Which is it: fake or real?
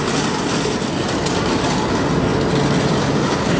real